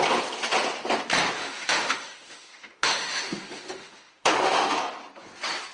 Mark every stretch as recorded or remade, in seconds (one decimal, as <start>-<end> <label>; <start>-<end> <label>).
0.0-1.4 recorded; 1.4-4.8 remade; 4.8-5.7 recorded